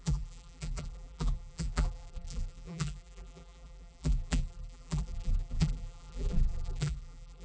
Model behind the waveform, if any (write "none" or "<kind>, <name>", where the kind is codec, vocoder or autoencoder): vocoder, BigVGAN v2